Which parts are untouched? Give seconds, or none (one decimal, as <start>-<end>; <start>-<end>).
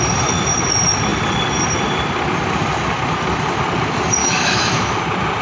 0.0-4.2; 5.0-5.4